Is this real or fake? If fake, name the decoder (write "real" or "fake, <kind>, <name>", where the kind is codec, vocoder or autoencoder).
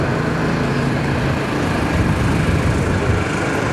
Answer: fake, vocoder, BigVGAN v2